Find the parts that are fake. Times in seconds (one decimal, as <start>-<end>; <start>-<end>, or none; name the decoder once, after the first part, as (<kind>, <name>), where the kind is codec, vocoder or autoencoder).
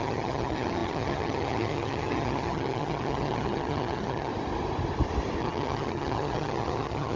0.0-4.3 (vocoder, HiFi-GAN); 5.4-7.2